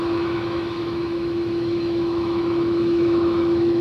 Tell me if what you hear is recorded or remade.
remade